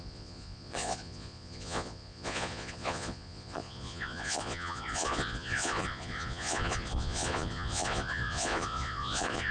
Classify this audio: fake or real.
fake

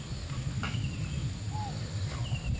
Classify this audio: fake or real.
real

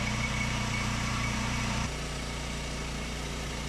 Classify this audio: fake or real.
fake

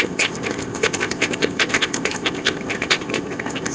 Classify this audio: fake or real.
fake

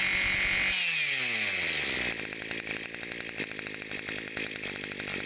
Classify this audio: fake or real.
real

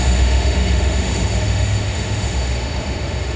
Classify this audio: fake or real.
fake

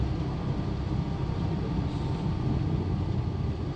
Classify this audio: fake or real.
real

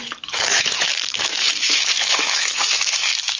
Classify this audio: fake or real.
fake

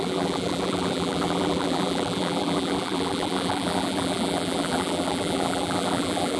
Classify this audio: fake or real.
fake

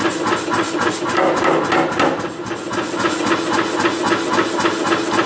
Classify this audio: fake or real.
real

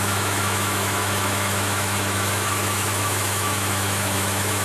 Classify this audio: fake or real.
fake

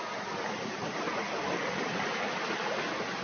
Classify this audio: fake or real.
real